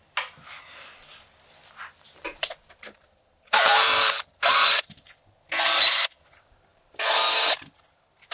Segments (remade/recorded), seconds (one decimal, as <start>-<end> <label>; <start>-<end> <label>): 0.0-3.0 recorded; 3.0-5.2 remade; 5.2-6.7 recorded; 6.7-7.2 remade; 7.2-8.3 recorded